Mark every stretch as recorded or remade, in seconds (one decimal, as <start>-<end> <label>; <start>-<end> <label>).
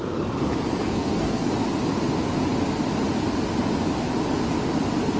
0.0-0.8 recorded; 0.8-1.5 remade; 1.5-5.2 recorded